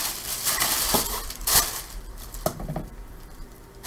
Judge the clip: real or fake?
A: fake